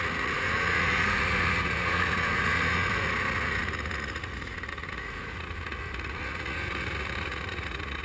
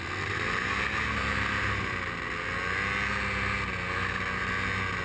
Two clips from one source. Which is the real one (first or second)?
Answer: second